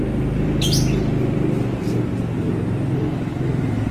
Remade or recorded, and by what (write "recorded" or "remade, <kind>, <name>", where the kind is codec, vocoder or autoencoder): recorded